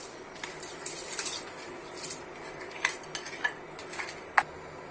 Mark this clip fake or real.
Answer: real